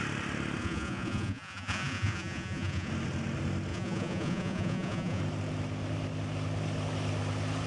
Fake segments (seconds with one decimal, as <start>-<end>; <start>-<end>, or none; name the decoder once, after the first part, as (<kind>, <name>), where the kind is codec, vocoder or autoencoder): 0.6-2.9 (vocoder, Vocos); 3.7-5.2